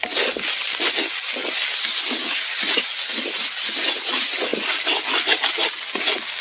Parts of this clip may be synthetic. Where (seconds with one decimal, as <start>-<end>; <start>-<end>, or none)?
none